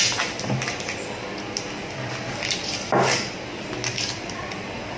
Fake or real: real